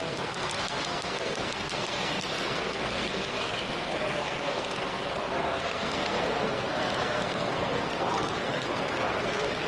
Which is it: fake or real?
fake